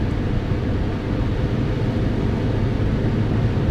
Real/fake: real